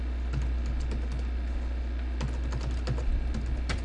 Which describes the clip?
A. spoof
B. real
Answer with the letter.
B